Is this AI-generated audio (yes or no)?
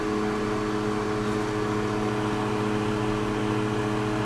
no